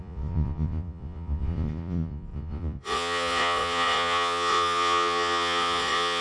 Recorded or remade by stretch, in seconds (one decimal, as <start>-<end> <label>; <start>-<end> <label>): 0.0-6.2 remade